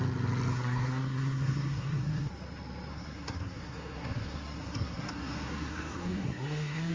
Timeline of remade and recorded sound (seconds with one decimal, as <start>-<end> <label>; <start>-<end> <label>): 0.0-0.5 recorded; 0.5-2.3 remade; 2.3-2.9 recorded; 2.9-6.9 remade